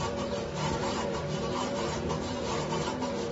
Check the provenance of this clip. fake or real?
fake